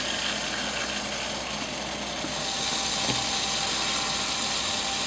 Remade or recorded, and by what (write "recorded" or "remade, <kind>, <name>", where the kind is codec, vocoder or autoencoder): recorded